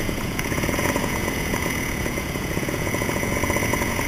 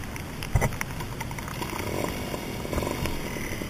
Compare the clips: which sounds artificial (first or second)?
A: first